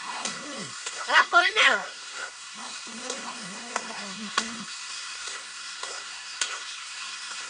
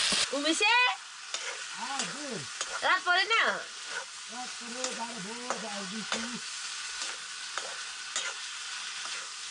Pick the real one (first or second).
second